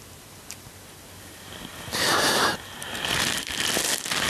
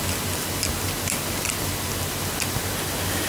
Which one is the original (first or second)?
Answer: second